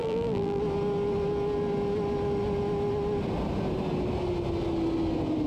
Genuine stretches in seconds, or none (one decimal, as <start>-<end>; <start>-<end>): 0.6-5.5